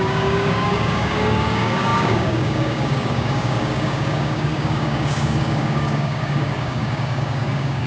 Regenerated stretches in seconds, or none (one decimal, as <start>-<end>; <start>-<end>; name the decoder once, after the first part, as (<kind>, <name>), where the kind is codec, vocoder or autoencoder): 0.0-7.9 (codec, DAC)